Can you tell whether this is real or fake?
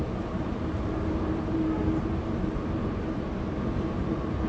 fake